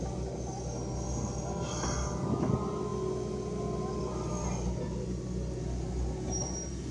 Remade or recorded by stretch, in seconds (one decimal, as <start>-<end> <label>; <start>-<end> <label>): 0.0-6.9 recorded